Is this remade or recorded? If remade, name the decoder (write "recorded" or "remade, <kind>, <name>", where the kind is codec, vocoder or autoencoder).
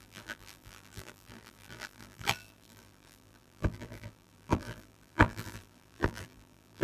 remade, vocoder, BigVGAN v2